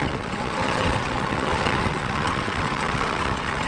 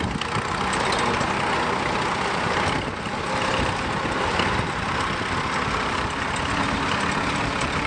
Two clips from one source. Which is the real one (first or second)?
second